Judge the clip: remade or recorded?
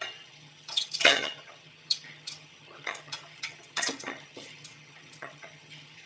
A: remade